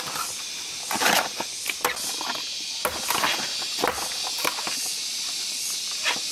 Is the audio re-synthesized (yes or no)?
no